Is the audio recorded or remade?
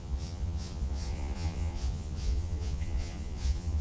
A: remade